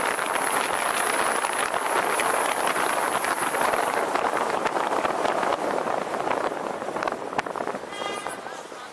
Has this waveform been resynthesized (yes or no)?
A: no